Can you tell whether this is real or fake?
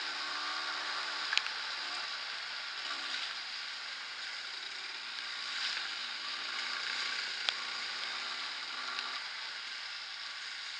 real